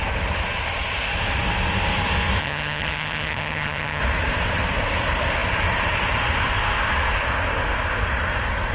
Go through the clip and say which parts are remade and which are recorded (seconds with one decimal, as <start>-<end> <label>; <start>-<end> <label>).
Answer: 0.0-2.4 recorded; 2.4-4.0 remade; 4.0-8.7 recorded

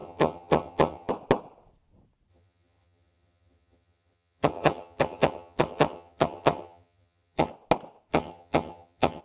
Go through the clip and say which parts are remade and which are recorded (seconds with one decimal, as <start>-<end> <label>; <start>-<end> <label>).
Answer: 0.0-1.1 remade; 1.1-2.3 recorded; 2.3-7.5 remade; 7.5-8.1 recorded; 8.1-9.2 remade

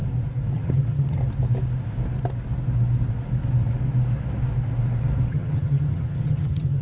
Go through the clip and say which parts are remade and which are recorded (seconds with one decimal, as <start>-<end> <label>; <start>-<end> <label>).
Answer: 0.0-0.5 recorded; 0.5-1.2 remade; 1.2-5.3 recorded; 5.3-6.8 remade

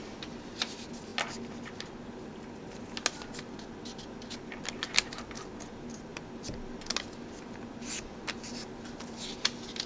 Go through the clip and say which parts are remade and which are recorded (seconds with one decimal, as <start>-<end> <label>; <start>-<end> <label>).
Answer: 0.0-9.9 recorded

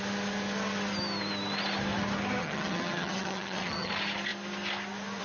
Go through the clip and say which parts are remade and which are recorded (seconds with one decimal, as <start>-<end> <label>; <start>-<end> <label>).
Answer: 0.0-2.4 recorded; 2.4-3.9 remade; 3.9-5.2 recorded

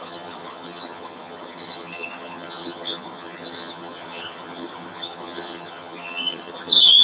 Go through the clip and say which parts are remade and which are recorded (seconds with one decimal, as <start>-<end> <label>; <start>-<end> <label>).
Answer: 0.0-7.0 remade

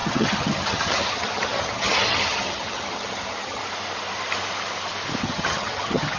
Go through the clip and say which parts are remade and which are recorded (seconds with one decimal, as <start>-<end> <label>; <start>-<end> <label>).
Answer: 0.0-3.6 remade; 3.6-5.2 recorded; 5.2-6.2 remade

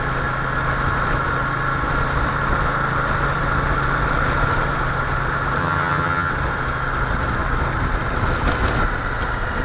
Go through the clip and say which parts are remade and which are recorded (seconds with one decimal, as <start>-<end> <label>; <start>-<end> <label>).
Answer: 0.0-5.6 recorded; 5.6-6.3 remade; 6.3-9.6 recorded